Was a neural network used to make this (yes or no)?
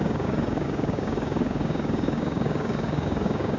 yes